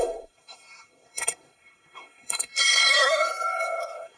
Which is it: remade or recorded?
remade